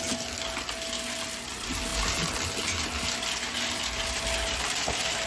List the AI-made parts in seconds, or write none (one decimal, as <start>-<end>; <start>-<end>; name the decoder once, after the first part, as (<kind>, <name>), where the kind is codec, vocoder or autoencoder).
none